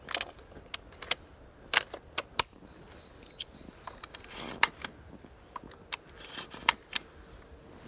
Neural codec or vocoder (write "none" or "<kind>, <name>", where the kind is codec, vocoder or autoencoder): none